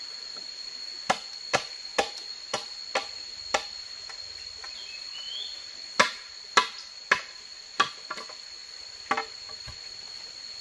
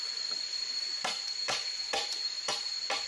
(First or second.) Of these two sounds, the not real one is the second